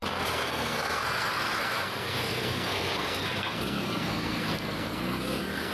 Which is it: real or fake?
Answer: fake